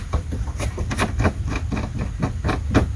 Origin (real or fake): real